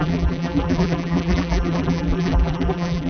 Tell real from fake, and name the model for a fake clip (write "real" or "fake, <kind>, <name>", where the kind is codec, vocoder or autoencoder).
fake, vocoder, BigVGAN v2